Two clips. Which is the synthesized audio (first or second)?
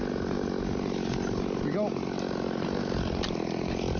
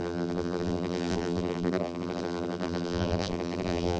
second